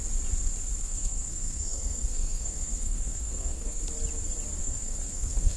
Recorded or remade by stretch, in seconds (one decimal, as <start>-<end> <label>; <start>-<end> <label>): 0.0-0.8 recorded; 0.8-3.8 remade; 3.8-4.6 recorded; 4.6-5.6 remade